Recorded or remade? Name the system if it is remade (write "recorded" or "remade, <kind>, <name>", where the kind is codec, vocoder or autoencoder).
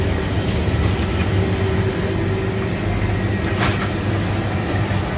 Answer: recorded